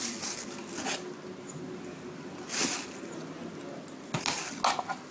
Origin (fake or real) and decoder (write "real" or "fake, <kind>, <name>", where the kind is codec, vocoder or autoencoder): real